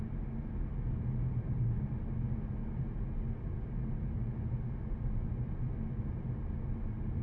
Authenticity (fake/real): real